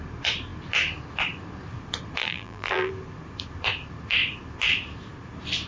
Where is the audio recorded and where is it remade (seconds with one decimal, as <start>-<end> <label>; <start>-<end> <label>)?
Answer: 0.0-2.2 recorded; 2.2-2.9 remade; 2.9-5.7 recorded

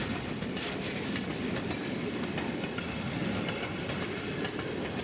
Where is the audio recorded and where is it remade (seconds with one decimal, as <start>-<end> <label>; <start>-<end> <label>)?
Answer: 0.0-3.2 recorded; 3.2-4.0 remade; 4.0-5.0 recorded

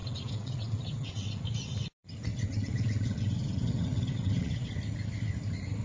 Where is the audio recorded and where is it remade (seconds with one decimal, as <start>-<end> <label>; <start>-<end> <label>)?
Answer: 0.0-1.4 remade; 1.4-2.3 recorded; 2.3-4.7 remade; 4.7-5.8 recorded

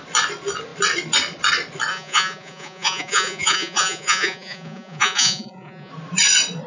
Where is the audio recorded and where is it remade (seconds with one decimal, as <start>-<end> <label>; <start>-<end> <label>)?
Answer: 0.0-1.9 recorded; 1.9-5.9 remade; 5.9-6.7 recorded